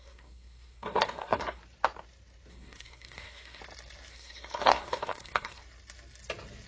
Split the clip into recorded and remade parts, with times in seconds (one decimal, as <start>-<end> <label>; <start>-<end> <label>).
0.0-1.6 remade; 1.6-2.5 recorded; 2.5-3.6 remade; 3.6-4.1 recorded; 4.1-5.6 remade; 5.6-6.7 recorded